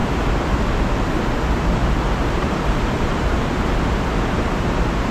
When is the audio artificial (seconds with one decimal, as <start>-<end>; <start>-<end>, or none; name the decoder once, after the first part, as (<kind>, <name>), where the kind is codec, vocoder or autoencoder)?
1.8-3.6 (vocoder, BigVGAN v2)